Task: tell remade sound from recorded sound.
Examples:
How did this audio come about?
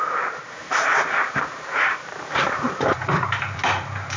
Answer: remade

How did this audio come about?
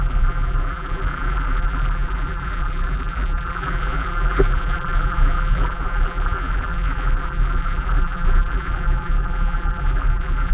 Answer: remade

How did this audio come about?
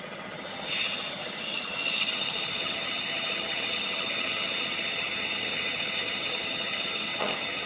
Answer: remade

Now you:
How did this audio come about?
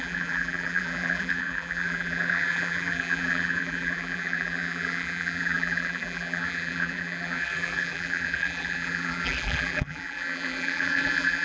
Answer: remade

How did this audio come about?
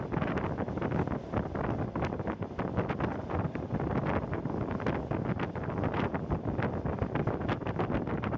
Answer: recorded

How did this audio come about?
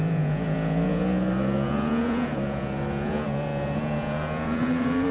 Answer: remade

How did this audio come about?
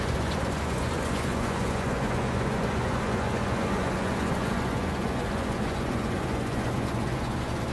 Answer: remade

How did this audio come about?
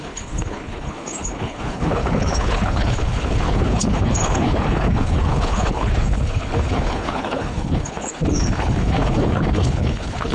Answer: remade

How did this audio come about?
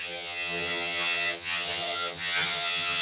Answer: remade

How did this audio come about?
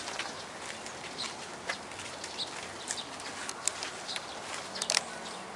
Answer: recorded